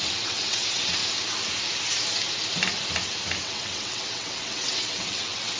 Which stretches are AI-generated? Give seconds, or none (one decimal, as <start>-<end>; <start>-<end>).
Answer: 0.0-1.0; 3.4-5.6